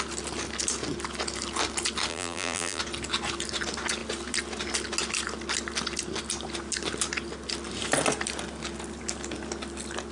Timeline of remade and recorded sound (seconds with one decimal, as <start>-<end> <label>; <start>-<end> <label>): 0.0-2.1 recorded; 2.1-2.8 remade; 2.8-10.1 recorded